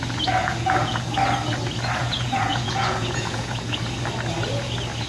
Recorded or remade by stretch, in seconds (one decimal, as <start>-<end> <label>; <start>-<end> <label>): 0.0-0.4 recorded; 0.4-1.0 remade; 1.0-2.0 recorded; 2.0-3.8 remade; 3.8-5.1 recorded